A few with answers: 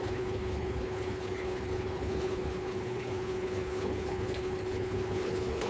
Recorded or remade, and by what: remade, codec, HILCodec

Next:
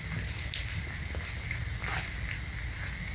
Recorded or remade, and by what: recorded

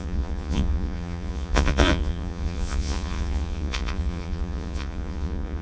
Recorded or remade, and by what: remade, vocoder, Vocos